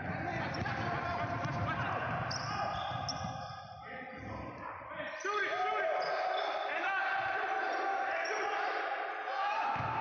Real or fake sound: real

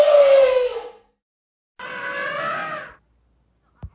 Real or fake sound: real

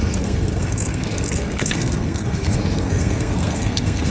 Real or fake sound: fake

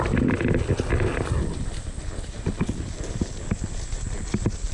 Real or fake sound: real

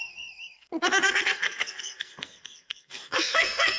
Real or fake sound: fake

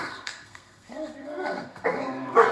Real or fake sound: fake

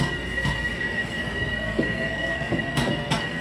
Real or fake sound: fake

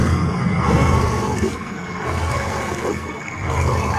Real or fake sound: fake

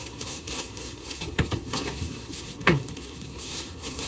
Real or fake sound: fake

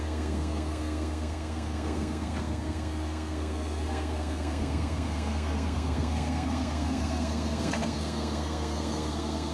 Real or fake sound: fake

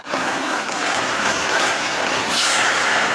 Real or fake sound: fake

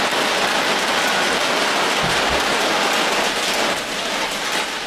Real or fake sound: real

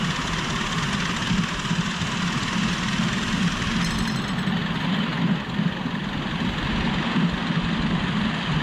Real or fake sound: real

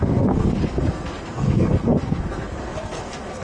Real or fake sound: fake